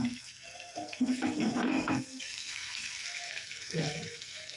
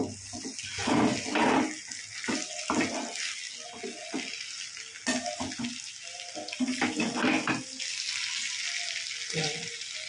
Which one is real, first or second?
second